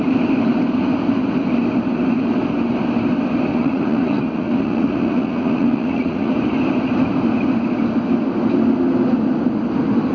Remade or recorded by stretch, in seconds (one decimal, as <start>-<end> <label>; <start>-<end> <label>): 0.0-3.5 recorded; 3.5-6.3 remade; 6.3-10.1 recorded